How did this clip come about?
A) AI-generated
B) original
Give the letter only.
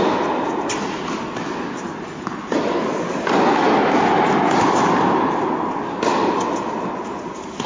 B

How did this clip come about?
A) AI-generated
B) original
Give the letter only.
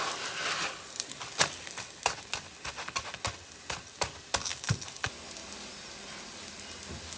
B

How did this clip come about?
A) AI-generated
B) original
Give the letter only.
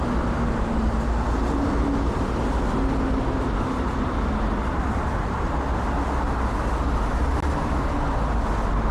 B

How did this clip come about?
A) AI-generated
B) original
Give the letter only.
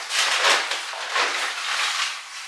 B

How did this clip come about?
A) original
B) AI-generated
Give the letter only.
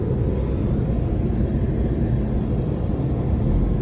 A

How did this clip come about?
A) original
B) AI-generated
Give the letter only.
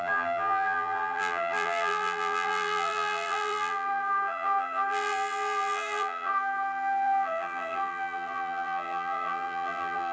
B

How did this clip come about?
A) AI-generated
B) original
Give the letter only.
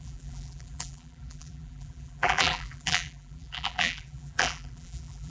A